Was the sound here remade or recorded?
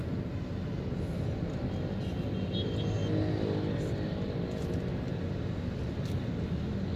recorded